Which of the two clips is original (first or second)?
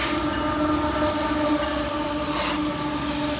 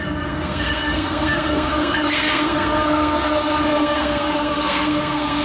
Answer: first